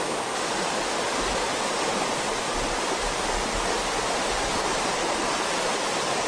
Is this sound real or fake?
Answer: real